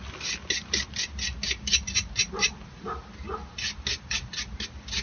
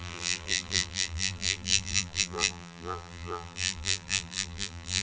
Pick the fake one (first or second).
second